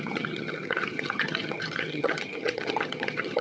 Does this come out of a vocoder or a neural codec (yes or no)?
yes